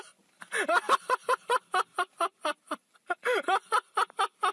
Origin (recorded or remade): recorded